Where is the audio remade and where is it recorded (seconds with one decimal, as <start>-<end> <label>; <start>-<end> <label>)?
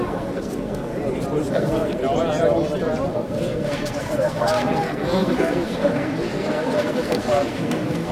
0.0-0.9 remade; 0.9-1.5 recorded; 1.5-2.0 remade; 2.0-3.1 recorded; 3.1-8.1 remade